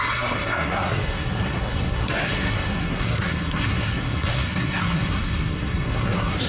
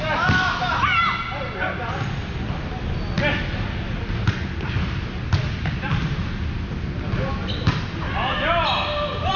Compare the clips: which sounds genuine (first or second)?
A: second